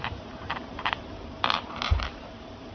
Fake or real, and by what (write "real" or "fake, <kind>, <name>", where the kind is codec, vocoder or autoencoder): fake, vocoder, BigVGAN v2